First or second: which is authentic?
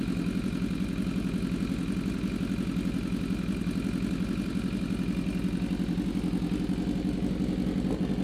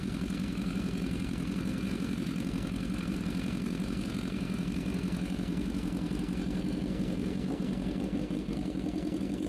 first